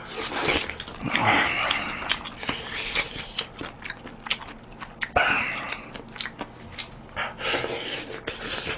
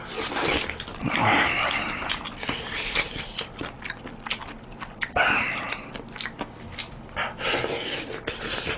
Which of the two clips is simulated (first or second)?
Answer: second